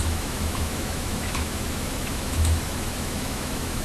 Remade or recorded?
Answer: remade